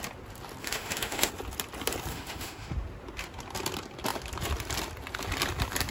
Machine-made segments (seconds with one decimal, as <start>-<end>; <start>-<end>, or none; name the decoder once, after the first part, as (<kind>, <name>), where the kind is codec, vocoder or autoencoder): 0.6-1.3 (autoencoder, DAC-VAE); 2.1-2.7